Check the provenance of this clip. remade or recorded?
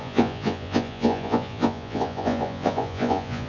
remade